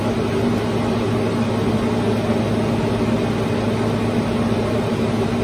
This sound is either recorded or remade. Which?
recorded